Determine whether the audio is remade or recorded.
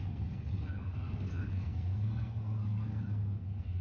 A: remade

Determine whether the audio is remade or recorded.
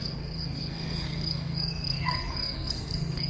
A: remade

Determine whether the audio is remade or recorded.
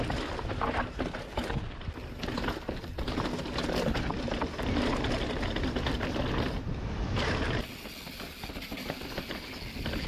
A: recorded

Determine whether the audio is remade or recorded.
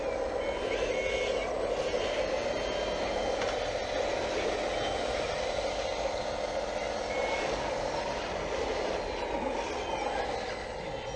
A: recorded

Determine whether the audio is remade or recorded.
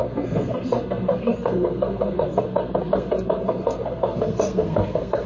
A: remade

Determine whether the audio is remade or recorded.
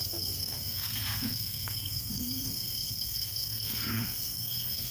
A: remade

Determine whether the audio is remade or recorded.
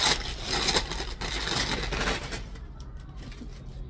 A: recorded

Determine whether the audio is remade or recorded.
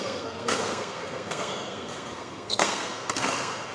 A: remade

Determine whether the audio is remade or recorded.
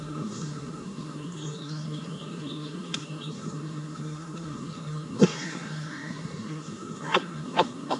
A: remade